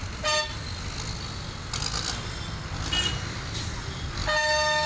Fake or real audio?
real